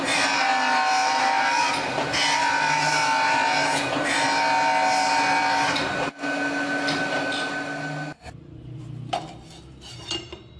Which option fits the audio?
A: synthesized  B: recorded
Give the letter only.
B